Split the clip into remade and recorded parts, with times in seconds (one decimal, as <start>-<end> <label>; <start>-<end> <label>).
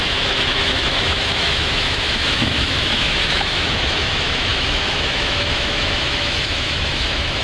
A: 0.0-7.4 remade